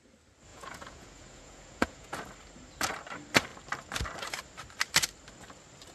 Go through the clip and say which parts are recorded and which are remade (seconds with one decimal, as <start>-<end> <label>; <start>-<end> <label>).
0.0-0.5 recorded; 0.5-2.2 remade; 2.2-5.9 recorded